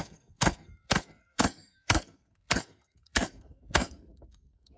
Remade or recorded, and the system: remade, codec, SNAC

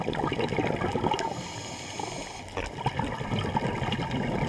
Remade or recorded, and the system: recorded